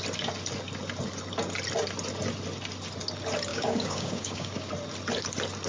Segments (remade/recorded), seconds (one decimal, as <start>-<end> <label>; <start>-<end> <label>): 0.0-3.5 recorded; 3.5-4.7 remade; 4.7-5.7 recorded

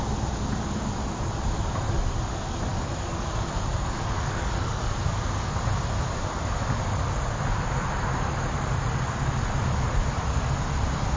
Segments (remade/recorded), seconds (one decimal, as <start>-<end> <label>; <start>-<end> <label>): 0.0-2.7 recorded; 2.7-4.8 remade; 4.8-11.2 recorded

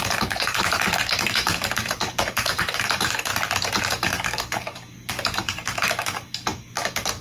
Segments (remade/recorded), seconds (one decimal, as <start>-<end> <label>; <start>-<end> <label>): 0.0-3.3 remade; 3.3-3.8 recorded; 3.8-7.2 remade